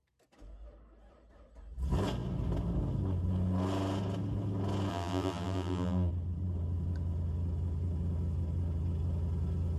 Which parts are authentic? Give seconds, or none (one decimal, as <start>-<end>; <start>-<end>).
0.0-4.9; 6.1-9.8